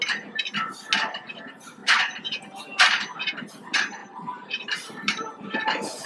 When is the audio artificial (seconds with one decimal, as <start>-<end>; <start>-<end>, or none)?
1.8-2.6; 4.0-6.1